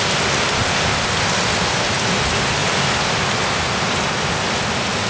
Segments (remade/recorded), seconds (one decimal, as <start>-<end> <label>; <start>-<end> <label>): 0.0-5.1 recorded